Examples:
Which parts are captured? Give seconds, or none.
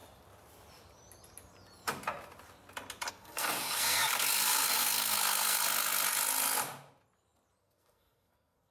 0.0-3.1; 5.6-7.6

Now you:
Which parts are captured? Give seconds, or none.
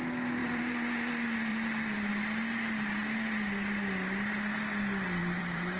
0.0-0.4; 1.1-1.5; 2.1-5.2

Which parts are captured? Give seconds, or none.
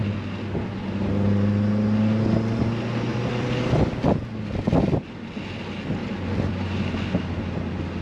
0.0-3.1; 3.6-6.0; 6.8-8.0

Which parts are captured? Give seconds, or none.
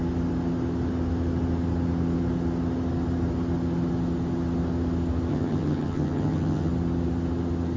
0.0-5.3; 6.7-7.8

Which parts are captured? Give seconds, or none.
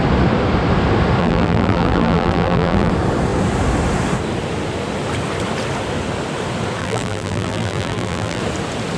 0.0-1.2; 2.9-6.8; 8.4-9.0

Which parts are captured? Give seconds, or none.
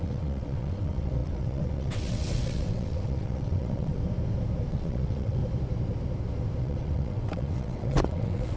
4.0-4.7; 5.4-6.6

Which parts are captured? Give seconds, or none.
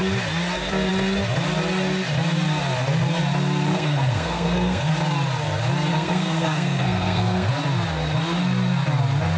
0.0-3.7; 4.9-5.9; 7.5-9.4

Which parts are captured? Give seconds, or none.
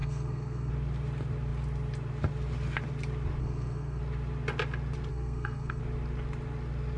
0.7-3.4; 4.0-5.1; 5.8-7.0